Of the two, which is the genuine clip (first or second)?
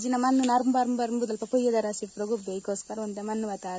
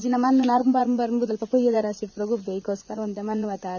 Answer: first